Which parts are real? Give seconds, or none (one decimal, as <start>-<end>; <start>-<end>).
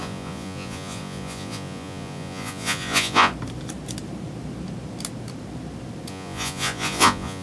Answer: 3.3-6.1